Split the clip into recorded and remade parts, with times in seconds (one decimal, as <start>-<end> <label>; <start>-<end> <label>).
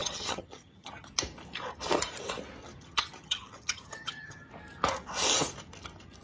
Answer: 0.0-1.1 remade; 1.1-2.6 recorded; 2.6-4.5 remade; 4.5-6.2 recorded